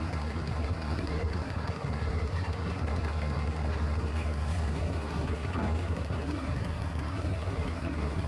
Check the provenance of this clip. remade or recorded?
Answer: remade